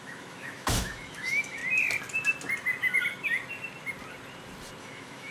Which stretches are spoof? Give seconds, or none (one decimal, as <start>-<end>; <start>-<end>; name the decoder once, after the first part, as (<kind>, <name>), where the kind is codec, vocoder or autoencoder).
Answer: 0.0-1.6 (autoencoder, DAC-VAE); 4.8-5.3